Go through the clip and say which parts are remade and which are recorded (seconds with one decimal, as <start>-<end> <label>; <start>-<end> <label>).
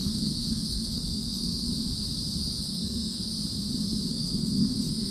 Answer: 0.0-1.7 remade; 1.7-2.6 recorded; 2.6-3.3 remade; 3.3-4.1 recorded; 4.1-5.1 remade